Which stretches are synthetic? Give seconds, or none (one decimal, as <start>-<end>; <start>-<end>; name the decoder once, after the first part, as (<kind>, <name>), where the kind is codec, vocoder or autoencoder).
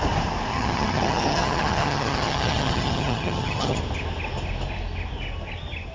0.5-3.8 (vocoder, HiFi-GAN)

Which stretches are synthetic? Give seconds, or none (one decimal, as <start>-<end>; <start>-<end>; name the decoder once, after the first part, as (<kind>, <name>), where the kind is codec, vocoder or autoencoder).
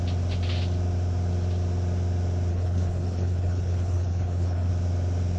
2.5-4.7 (codec, HILCodec)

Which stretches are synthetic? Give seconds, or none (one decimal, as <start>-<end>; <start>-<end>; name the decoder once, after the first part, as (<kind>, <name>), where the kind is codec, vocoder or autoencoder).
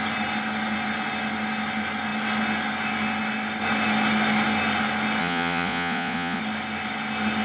5.2-6.4 (vocoder, Vocos)